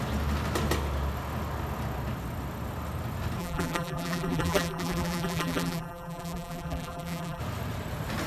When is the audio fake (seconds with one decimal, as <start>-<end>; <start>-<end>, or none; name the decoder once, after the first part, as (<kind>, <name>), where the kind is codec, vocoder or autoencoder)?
3.4-7.4 (vocoder, BigVGAN v2)